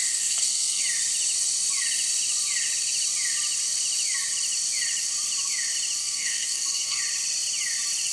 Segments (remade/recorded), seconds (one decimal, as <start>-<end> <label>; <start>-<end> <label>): 0.0-0.8 remade; 0.8-6.0 recorded; 6.0-7.0 remade; 7.0-8.1 recorded